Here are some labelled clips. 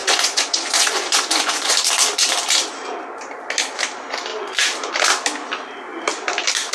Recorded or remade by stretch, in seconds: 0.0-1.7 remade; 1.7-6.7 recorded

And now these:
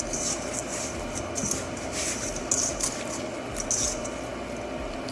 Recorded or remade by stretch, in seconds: 0.0-5.1 recorded

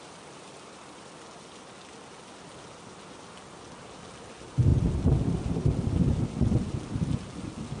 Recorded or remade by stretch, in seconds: 0.0-7.8 recorded